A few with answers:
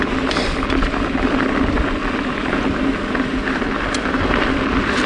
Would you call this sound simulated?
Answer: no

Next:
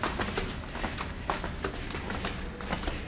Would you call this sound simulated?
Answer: no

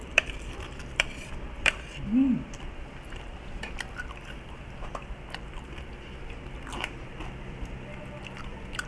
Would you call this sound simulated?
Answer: yes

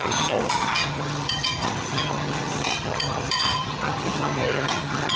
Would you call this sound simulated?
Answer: yes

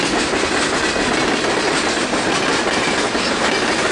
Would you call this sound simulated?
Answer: no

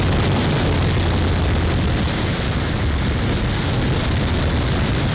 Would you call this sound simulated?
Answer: no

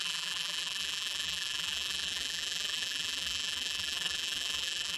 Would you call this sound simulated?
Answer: yes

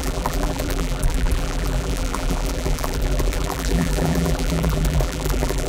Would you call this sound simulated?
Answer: yes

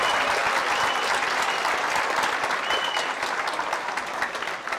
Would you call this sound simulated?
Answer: no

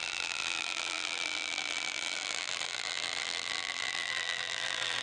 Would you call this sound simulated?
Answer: yes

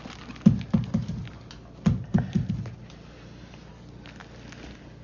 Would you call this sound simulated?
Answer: no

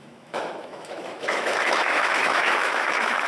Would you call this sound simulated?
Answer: yes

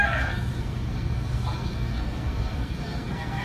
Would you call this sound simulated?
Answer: yes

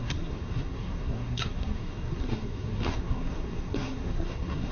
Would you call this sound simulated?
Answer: yes